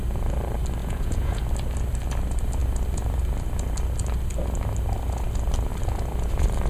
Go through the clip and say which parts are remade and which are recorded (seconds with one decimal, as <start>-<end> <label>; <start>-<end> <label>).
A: 0.0-0.8 recorded; 0.8-1.4 remade; 1.4-6.7 recorded